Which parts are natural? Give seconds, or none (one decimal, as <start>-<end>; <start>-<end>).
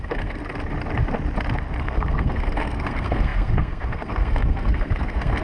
0.4-1.8